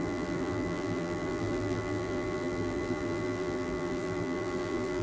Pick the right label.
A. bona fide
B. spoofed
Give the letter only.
B